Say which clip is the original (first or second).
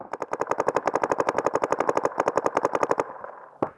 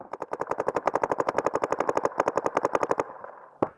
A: first